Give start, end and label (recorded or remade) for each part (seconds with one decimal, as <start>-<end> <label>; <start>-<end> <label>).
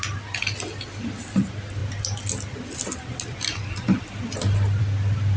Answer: 0.0-5.4 recorded